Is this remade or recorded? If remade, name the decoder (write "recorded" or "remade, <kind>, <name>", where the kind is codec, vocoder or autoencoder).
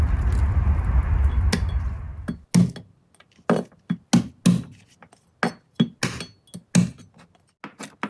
recorded